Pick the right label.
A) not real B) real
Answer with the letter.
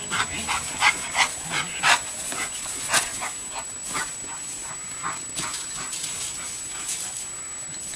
B